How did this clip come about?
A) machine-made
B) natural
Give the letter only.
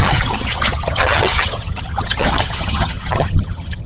A